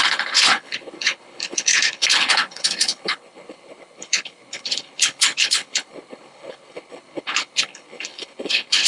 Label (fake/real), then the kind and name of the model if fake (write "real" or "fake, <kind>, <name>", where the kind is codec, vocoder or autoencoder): fake, codec, HILCodec